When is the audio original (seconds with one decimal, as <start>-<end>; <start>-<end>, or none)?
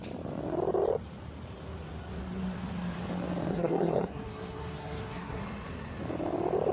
0.0-3.5; 5.4-6.7